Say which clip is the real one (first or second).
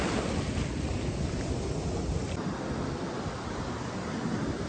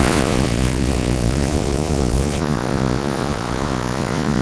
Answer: first